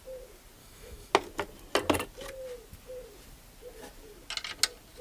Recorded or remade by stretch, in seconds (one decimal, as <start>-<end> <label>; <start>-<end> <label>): 0.0-0.6 recorded; 0.6-1.1 remade; 1.1-5.0 recorded